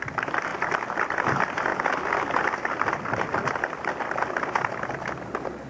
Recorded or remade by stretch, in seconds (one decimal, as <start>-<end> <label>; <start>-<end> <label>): 0.0-5.7 recorded